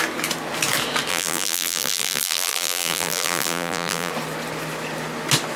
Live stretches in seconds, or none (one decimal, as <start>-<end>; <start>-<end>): 0.0-1.1; 4.1-5.6